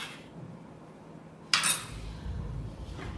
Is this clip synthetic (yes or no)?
no